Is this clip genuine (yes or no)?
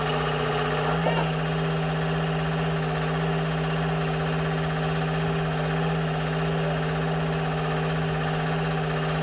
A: yes